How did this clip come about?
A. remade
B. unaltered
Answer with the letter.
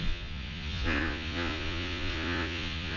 A